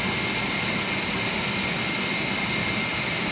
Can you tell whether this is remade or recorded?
recorded